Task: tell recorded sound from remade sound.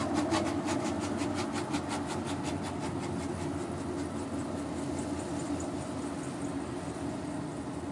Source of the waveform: recorded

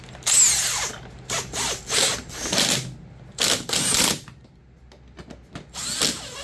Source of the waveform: recorded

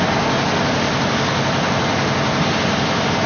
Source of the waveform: recorded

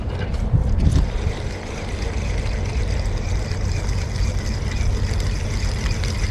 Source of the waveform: recorded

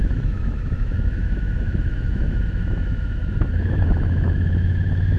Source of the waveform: remade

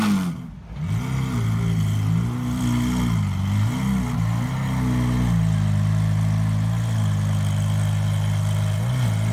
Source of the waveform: recorded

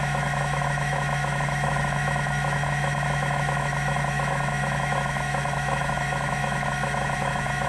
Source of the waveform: remade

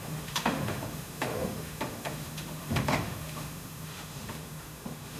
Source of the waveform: remade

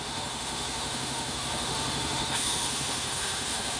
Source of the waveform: remade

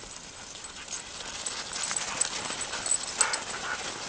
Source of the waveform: recorded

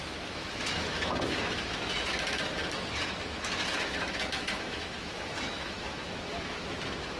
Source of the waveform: remade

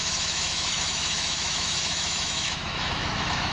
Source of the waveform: remade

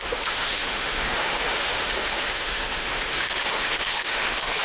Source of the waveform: remade